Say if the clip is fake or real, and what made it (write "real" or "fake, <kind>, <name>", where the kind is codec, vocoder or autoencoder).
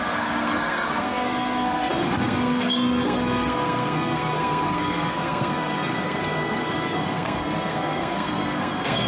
fake, codec, SNAC